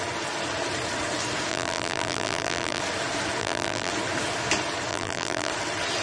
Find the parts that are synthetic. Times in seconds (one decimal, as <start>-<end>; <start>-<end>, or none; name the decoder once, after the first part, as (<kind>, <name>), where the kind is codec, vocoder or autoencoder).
1.5-2.8 (vocoder, BigVGAN v2); 3.4-3.9; 4.9-5.5